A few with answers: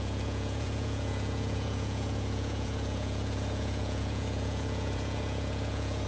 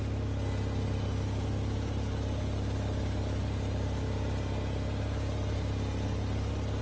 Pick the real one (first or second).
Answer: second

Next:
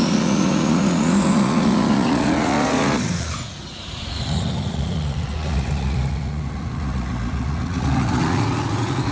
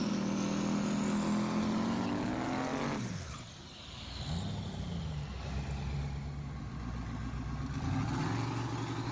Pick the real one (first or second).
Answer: second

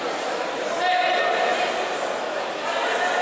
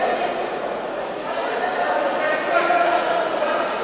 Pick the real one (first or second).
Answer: first